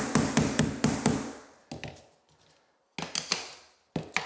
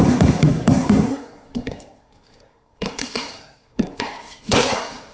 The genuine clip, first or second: first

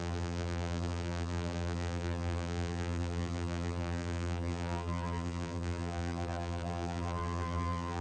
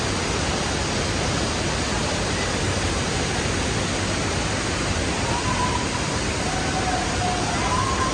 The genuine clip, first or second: second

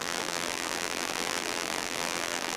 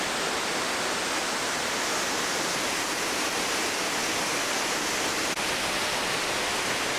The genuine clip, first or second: second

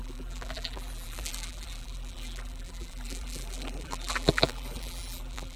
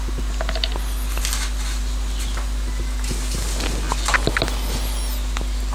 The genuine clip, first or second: second